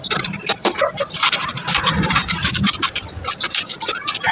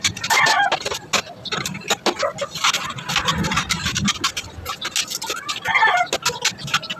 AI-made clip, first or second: first